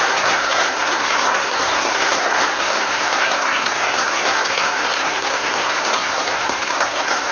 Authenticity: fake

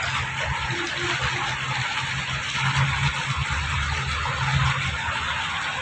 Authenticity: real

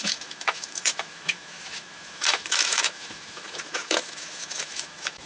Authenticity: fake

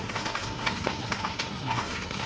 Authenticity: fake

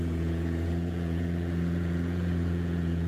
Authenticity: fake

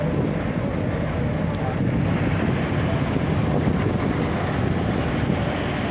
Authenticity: real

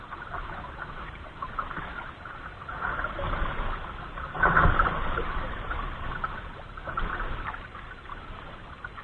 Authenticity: fake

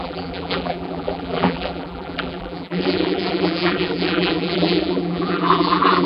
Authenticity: fake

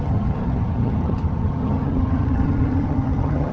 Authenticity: fake